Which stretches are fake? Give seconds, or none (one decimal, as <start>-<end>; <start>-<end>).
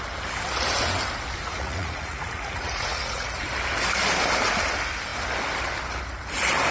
1.5-3.3